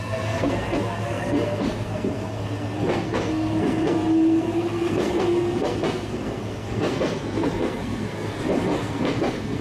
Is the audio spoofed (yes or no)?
yes